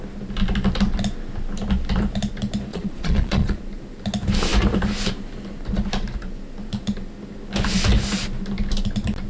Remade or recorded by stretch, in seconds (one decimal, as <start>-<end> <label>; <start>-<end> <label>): 0.0-2.7 recorded; 2.7-3.6 remade; 3.6-9.3 recorded